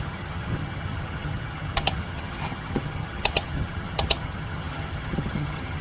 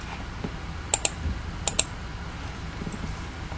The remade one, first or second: first